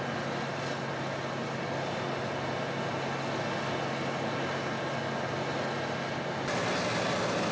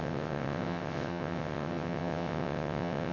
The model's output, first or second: second